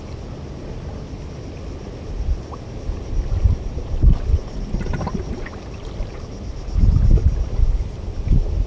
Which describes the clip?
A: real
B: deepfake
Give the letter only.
A